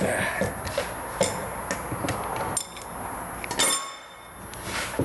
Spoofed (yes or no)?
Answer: no